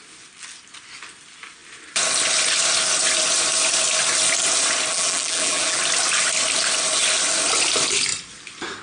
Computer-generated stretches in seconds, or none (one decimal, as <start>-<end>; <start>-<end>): 4.9-5.8